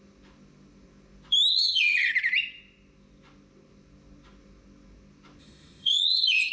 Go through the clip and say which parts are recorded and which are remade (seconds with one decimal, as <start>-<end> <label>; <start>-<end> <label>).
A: 0.0-1.5 recorded; 1.5-2.1 remade; 2.1-5.4 recorded; 5.4-6.5 remade